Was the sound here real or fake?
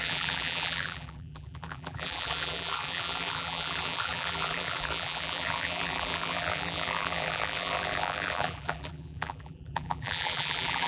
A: fake